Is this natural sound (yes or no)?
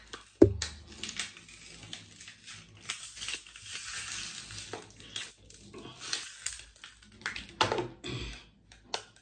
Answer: yes